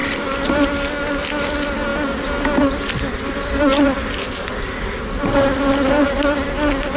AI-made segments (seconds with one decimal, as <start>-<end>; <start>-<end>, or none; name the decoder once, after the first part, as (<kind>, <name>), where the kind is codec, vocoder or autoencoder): none